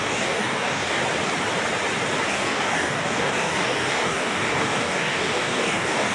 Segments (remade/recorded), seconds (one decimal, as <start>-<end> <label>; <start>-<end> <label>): 0.0-1.0 remade; 1.0-2.3 recorded; 2.3-6.1 remade